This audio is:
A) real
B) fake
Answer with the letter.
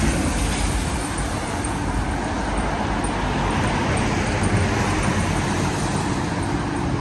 A